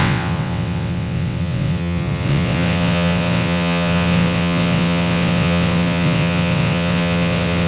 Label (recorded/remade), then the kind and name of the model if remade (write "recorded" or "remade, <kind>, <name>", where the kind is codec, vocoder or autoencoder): remade, vocoder, WaveNeXt